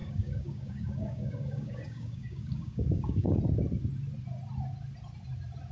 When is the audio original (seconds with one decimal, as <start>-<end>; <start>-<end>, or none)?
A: 3.4-5.7